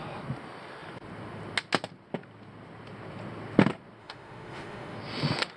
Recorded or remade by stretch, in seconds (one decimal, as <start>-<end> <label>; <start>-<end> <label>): 0.0-4.0 recorded; 4.0-5.0 remade; 5.0-5.6 recorded